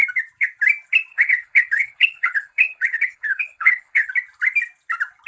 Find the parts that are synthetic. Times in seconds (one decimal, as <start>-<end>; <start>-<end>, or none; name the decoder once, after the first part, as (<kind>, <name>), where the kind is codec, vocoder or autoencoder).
1.1-4.1 (codec, HILCodec)

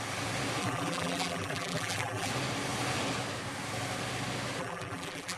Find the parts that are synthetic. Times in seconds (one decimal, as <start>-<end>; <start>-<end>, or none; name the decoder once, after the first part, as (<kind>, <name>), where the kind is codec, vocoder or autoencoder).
0.6-2.3 (vocoder, BigVGAN v2); 4.6-5.4